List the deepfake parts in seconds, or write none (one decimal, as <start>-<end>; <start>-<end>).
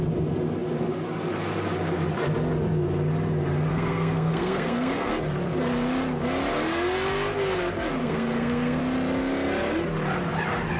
3.7-5.1; 8.0-8.8